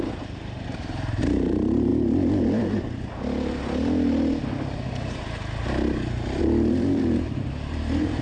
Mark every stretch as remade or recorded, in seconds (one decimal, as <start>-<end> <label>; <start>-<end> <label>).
0.0-1.9 remade; 1.9-6.4 recorded; 6.4-8.2 remade